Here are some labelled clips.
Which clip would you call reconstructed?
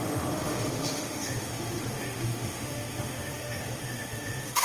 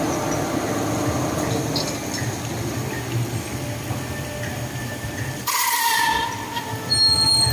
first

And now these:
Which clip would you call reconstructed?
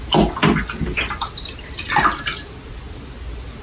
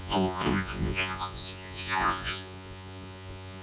second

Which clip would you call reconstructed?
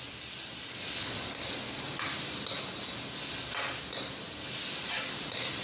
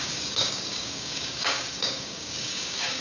second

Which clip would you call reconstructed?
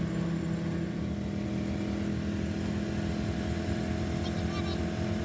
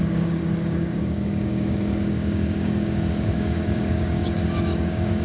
second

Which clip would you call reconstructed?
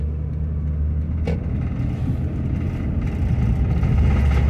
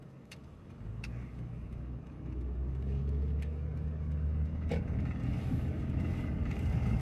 second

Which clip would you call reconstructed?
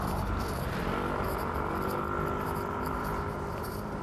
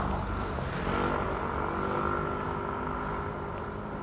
first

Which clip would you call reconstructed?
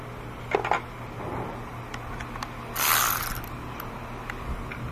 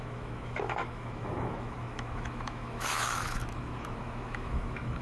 second